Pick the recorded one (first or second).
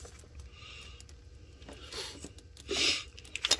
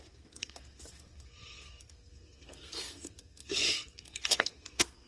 first